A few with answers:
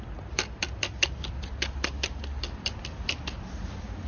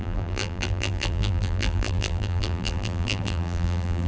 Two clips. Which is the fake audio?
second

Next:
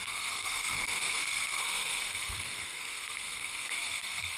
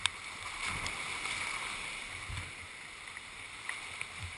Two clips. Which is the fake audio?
first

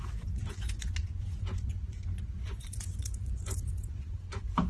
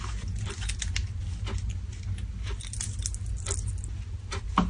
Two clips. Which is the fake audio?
first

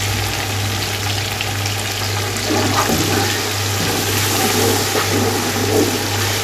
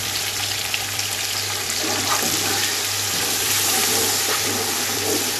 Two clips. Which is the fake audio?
second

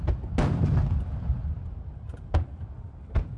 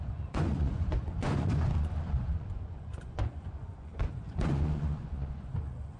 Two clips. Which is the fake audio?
second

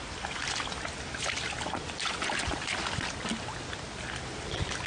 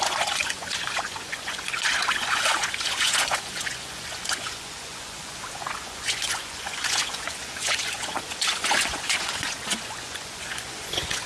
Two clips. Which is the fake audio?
second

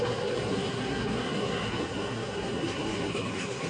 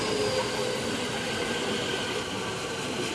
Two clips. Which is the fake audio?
first